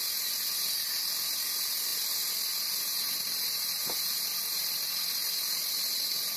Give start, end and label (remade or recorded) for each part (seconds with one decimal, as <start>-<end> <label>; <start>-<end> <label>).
0.0-6.4 recorded